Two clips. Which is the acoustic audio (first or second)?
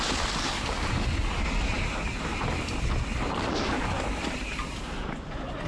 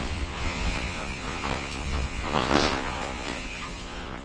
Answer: first